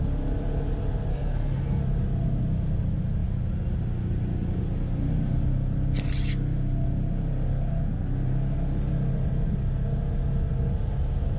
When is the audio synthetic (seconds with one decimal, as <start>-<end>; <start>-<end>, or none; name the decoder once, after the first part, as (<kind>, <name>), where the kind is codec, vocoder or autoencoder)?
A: 1.1-1.8 (codec, SNAC)